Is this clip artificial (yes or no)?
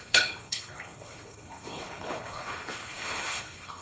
yes